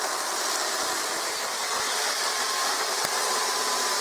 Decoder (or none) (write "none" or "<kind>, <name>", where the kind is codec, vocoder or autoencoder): none